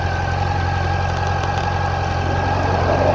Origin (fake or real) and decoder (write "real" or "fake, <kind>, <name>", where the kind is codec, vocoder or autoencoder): real